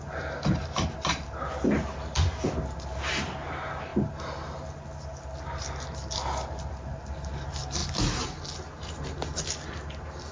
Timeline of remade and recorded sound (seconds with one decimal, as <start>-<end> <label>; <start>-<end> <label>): 0.0-10.3 recorded